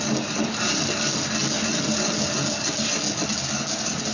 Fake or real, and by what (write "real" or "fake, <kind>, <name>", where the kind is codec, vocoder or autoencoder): real